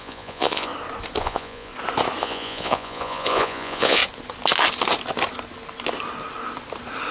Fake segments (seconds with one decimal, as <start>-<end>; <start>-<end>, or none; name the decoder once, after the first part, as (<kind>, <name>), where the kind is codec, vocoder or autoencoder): 0.0-0.7 (vocoder, Vocos); 1.2-1.7; 2.2-4.0